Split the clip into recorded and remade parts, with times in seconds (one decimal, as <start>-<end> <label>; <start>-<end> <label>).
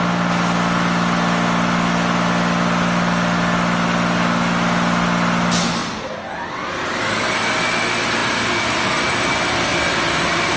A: 0.0-8.2 recorded; 8.2-10.1 remade; 10.1-10.6 recorded